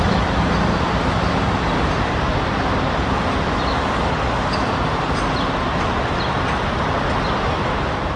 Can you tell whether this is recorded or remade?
recorded